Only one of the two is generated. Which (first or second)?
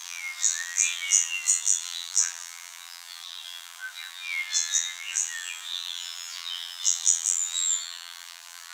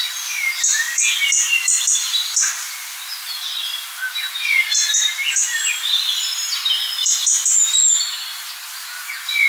first